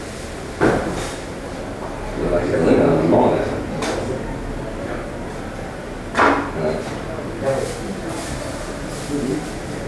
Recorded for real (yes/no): yes